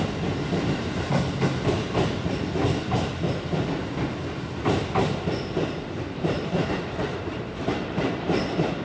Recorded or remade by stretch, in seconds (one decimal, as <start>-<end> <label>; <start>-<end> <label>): 0.0-1.1 remade; 1.1-5.7 recorded; 5.7-8.8 remade